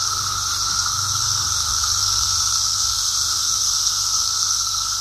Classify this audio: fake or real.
fake